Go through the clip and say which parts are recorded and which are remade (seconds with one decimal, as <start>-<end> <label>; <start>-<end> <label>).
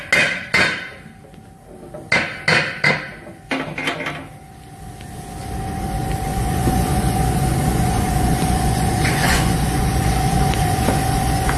0.0-6.3 recorded; 6.3-11.6 remade